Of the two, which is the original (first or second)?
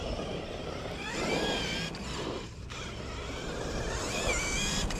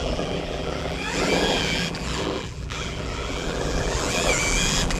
first